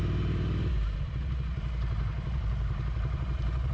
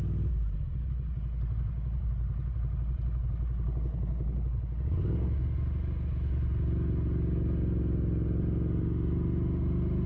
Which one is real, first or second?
second